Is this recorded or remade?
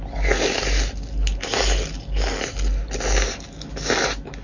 recorded